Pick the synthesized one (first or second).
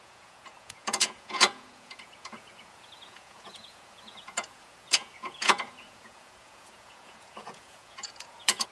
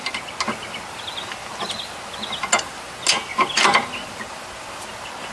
first